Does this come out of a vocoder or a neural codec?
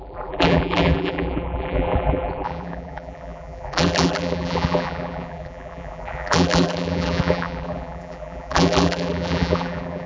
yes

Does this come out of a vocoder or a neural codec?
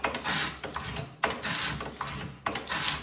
no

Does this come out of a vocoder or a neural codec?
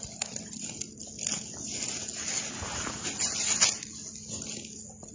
no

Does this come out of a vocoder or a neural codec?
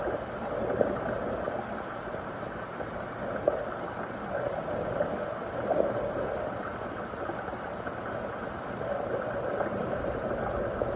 no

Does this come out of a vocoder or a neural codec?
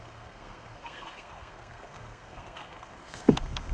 yes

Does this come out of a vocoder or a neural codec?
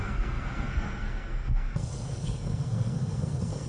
yes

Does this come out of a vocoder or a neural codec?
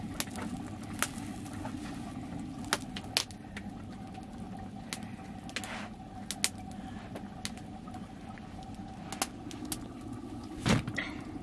no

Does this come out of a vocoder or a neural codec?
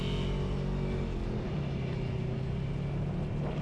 no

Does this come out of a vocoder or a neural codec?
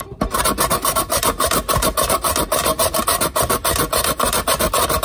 no